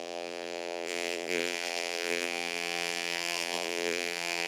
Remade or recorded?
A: remade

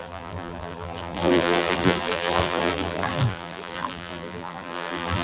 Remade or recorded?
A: remade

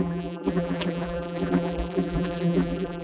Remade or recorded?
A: remade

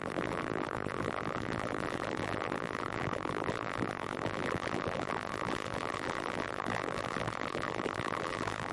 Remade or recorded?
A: remade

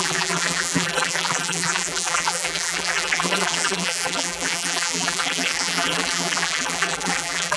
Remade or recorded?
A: remade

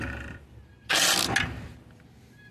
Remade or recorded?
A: recorded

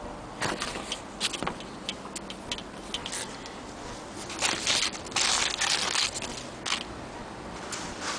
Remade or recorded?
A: recorded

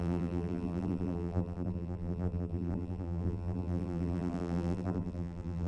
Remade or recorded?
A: remade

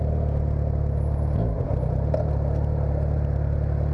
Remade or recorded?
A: recorded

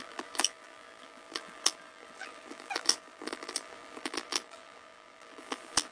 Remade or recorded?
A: remade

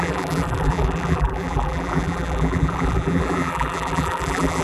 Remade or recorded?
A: remade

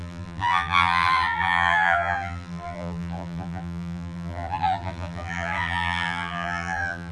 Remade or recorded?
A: remade